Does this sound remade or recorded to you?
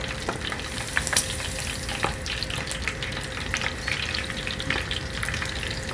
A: recorded